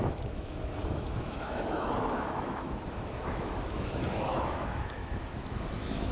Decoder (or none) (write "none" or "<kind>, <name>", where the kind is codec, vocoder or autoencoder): autoencoder, DAC-VAE